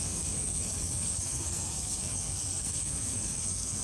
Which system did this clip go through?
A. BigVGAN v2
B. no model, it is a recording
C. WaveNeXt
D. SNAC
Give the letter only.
D